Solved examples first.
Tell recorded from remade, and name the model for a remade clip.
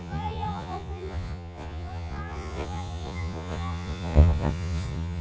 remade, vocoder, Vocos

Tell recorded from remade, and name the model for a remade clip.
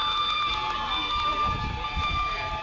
recorded